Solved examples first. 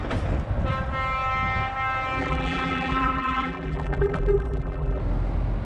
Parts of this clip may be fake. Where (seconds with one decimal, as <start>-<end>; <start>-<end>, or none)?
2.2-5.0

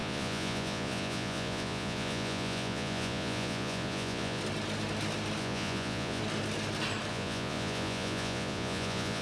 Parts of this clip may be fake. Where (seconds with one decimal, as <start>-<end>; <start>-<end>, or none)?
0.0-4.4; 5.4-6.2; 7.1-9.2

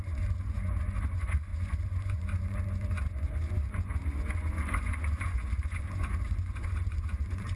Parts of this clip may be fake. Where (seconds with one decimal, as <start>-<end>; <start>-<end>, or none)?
0.0-7.6